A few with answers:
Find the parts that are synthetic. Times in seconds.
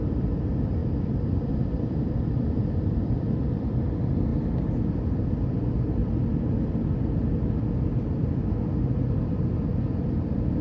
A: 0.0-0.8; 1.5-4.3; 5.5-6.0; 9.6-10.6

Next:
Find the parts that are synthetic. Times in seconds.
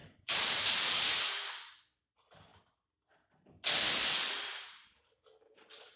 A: 0.0-0.6; 4.4-5.0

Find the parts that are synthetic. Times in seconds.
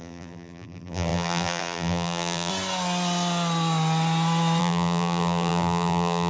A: 0.0-2.5; 4.6-6.3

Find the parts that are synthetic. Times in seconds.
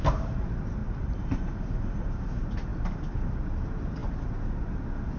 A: 0.8-2.3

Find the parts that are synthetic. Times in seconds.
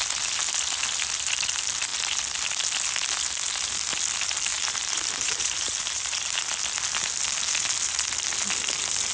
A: 4.5-6.4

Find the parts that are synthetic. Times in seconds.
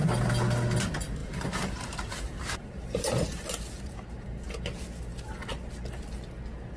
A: 1.2-4.5; 5.1-5.7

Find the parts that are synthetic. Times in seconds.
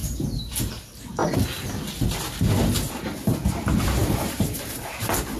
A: 0.0-0.6; 4.0-4.8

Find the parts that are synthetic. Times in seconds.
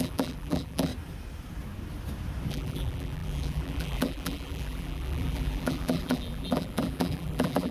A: 0.0-0.9; 2.5-7.7